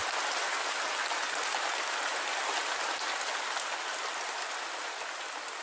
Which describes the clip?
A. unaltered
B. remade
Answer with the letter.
A